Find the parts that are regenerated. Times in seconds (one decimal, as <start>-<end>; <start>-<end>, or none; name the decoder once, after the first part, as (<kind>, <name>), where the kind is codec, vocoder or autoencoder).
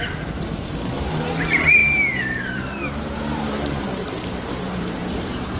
0.0-5.6 (vocoder, BigVGAN v2)